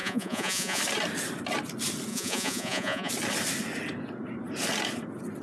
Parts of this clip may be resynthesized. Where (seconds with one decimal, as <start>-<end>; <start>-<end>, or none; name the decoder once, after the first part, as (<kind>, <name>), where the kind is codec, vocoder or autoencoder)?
0.0-0.8 (vocoder, Vocos); 2.1-3.1